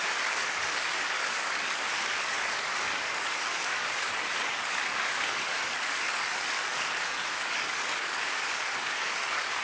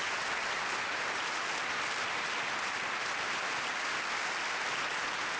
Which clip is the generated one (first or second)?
first